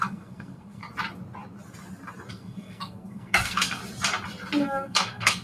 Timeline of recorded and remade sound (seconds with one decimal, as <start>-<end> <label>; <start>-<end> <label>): 0.0-0.8 remade; 0.8-2.3 recorded; 2.3-3.8 remade; 3.8-4.6 recorded; 4.6-5.4 remade